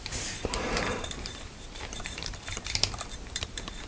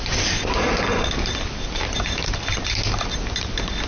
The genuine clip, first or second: second